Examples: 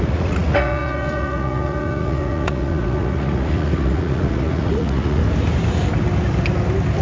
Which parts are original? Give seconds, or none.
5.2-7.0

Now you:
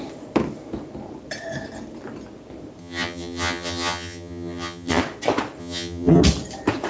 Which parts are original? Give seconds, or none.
0.0-2.8; 5.0-5.6; 6.2-6.9

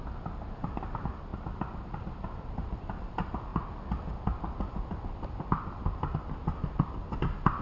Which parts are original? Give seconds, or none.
0.0-7.6